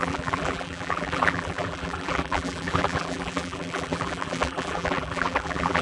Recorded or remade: remade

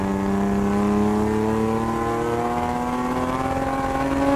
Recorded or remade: recorded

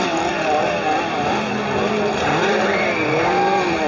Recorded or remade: remade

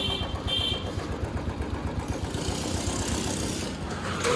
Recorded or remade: recorded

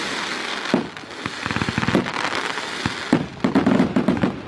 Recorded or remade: recorded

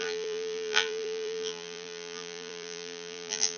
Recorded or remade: remade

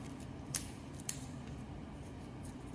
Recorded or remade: recorded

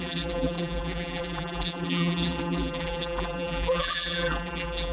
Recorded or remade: remade